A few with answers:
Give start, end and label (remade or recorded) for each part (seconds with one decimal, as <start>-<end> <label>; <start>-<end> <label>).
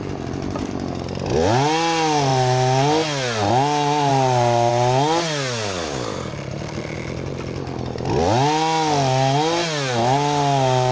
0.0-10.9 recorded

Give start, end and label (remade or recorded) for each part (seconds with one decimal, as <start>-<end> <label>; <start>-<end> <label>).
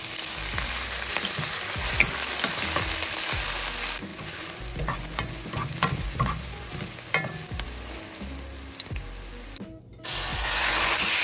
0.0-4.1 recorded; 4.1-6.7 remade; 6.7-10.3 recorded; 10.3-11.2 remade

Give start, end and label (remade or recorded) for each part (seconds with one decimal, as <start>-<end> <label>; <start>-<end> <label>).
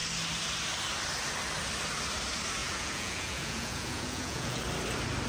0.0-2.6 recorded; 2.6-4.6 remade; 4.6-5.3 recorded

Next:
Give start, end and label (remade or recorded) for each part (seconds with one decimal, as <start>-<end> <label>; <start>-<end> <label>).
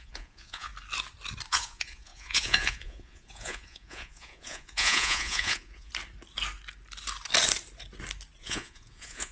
0.0-0.7 remade; 0.7-1.5 recorded; 1.5-5.9 remade; 5.9-8.4 recorded; 8.4-9.3 remade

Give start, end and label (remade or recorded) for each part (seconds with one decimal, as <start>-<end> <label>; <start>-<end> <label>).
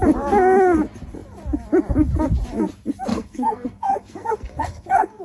0.0-3.1 recorded; 3.1-5.2 remade